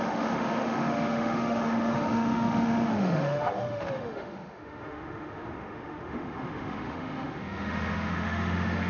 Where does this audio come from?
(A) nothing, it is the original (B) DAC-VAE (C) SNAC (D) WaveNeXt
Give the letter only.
B